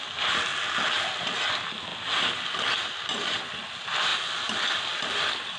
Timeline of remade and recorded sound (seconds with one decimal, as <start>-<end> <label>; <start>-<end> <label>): 0.0-5.6 recorded

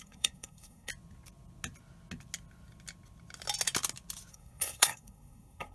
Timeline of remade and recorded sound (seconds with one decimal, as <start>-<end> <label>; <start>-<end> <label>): 0.0-0.9 remade; 0.9-4.3 recorded; 4.3-5.7 remade

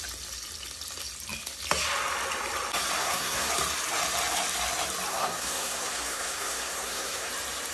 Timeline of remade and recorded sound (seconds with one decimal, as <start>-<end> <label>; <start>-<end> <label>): 0.0-3.0 recorded; 3.0-3.5 remade; 3.5-5.1 recorded; 5.1-7.3 remade; 7.3-7.7 recorded

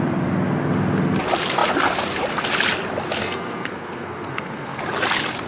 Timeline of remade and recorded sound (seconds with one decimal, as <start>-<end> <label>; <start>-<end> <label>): 0.0-3.2 recorded; 3.2-4.8 remade; 4.8-5.5 recorded

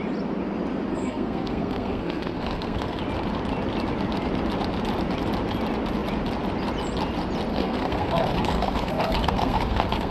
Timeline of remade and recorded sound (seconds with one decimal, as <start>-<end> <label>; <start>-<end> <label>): 0.0-0.9 recorded; 0.9-3.0 remade; 3.0-7.5 recorded; 7.5-10.1 remade